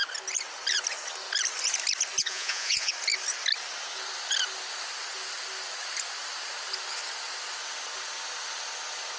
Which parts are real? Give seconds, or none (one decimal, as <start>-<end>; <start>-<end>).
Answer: 0.0-2.2; 2.9-9.2